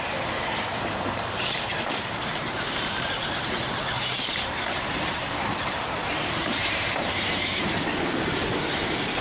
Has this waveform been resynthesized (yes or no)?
yes